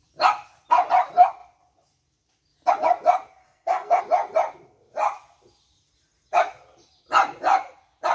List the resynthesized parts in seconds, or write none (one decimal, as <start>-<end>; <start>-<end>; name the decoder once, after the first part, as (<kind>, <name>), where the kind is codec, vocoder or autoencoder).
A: 3.4-4.0 (codec, SNAC)